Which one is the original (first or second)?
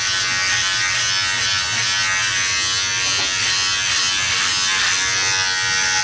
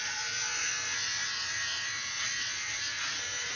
first